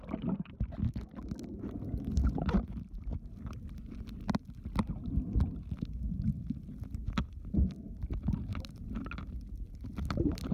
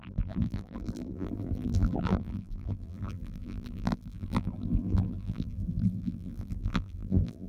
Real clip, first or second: first